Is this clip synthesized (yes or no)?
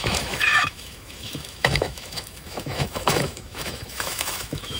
yes